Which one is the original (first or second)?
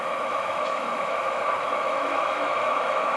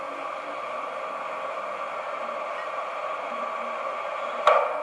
second